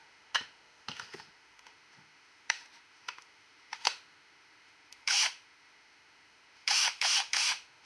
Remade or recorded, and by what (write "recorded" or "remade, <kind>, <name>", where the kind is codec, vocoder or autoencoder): remade, autoencoder, DAC-VAE